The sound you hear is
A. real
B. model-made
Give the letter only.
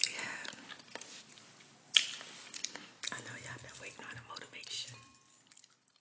A